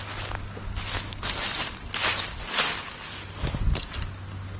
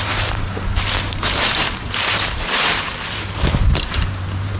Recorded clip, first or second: first